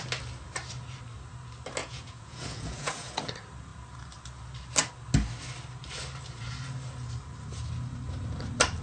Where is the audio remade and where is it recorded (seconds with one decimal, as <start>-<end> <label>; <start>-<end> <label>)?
0.0-1.8 recorded; 1.8-3.1 remade; 3.1-8.8 recorded